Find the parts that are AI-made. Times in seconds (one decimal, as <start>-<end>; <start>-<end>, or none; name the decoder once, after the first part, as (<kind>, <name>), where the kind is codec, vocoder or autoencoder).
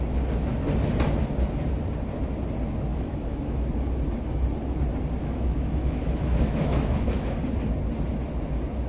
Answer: 2.9-3.7 (autoencoder, DAC-VAE); 5.2-7.4